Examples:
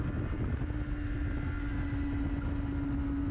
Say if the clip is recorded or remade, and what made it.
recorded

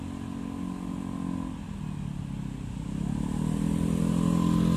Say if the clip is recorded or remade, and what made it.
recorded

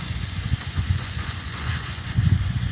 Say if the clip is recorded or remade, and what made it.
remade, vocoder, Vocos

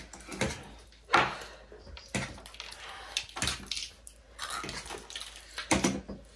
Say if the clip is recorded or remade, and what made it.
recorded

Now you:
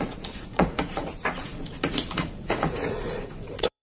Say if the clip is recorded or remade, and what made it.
remade, vocoder, Vocos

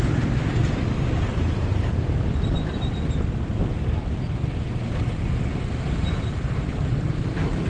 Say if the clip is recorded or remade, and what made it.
recorded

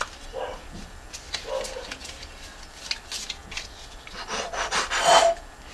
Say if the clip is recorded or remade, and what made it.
recorded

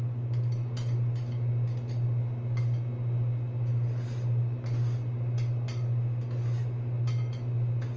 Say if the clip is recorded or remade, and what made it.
recorded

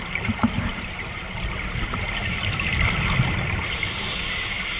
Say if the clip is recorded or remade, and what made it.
recorded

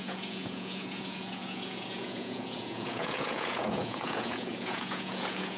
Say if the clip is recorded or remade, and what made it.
remade, vocoder, Vocos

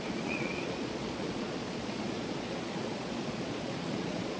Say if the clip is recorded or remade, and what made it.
remade, vocoder, Vocos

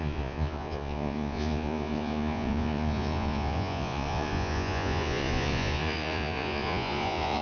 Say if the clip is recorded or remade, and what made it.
remade, vocoder, Vocos